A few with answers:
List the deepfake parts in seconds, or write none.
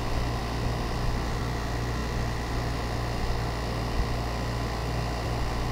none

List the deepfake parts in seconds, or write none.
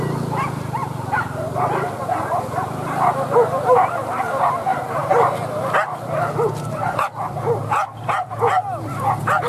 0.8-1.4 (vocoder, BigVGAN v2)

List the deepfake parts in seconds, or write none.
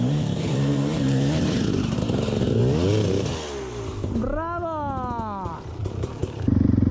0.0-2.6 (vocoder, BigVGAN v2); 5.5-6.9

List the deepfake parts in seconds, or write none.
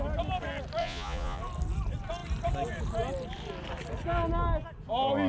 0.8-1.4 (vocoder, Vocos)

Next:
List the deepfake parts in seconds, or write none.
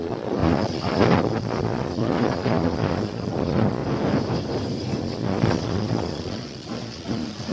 0.0-3.8 (vocoder, Vocos); 5.0-7.5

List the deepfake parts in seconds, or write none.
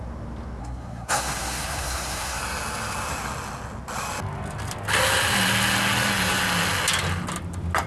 0.6-2.4 (codec, SNAC)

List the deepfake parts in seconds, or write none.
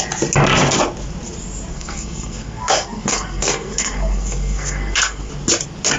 1.7-5.3 (codec, SNAC)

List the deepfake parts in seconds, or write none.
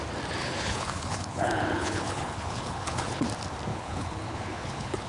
0.4-3.2 (codec, HILCodec); 3.7-5.1